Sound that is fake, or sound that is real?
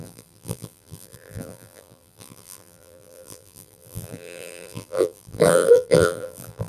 fake